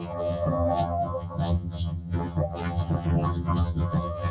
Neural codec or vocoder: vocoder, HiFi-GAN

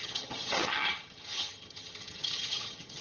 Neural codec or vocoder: vocoder, HiFi-GAN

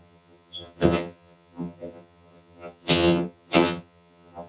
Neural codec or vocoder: vocoder, HiFi-GAN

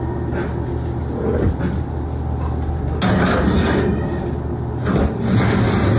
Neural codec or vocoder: none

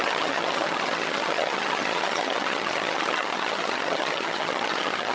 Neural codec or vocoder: vocoder, HiFi-GAN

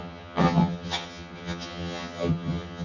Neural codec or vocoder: vocoder, HiFi-GAN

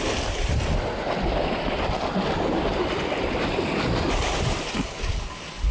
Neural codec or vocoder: none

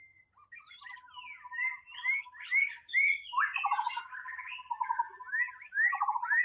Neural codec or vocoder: none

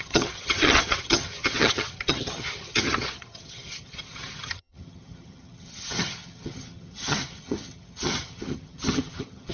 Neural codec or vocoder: vocoder, HiFi-GAN